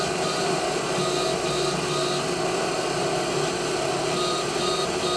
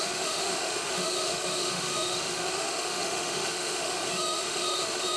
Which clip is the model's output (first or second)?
second